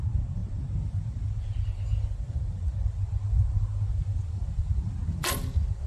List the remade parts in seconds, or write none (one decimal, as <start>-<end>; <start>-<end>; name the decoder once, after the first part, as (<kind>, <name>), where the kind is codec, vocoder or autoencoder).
none